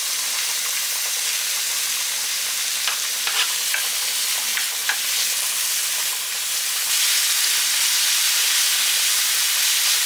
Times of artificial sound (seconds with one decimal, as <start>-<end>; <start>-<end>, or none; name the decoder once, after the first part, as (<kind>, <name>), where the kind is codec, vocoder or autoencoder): none